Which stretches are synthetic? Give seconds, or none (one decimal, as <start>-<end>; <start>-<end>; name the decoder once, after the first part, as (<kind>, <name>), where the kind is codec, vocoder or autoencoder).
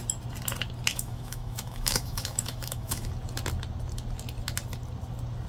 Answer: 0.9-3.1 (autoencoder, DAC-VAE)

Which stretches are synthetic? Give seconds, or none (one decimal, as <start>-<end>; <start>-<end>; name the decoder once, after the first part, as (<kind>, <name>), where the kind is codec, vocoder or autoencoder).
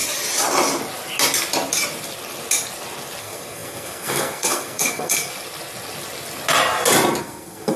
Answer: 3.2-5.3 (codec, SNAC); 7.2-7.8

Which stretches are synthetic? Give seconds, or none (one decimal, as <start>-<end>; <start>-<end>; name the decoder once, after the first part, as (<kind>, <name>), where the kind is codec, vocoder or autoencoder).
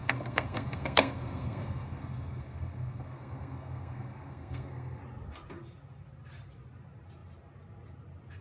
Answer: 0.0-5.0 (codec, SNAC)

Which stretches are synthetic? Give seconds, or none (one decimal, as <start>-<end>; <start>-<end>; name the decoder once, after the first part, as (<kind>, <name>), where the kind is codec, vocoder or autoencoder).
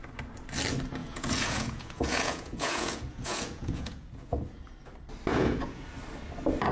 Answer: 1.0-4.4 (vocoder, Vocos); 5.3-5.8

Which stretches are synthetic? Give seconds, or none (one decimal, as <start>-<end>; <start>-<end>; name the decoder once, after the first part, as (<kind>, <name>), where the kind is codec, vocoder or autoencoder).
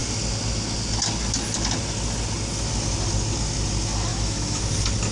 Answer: 4.1-4.6 (autoencoder, DAC-VAE)